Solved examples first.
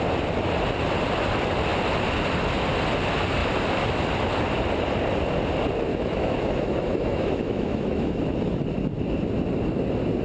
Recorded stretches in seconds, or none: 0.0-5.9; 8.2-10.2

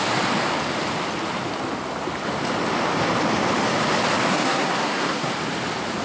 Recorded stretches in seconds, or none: 0.0-4.3; 5.3-6.0

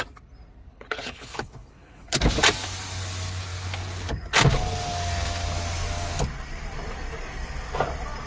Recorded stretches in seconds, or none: 0.0-0.7; 2.2-8.3

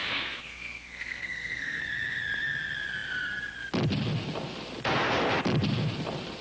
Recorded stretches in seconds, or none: 1.8-6.4

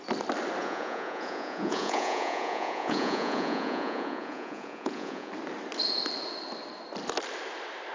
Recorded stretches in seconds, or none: 0.0-0.6; 5.3-7.9

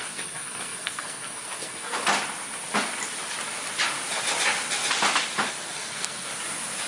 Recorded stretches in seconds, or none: 2.0-5.5; 6.3-6.9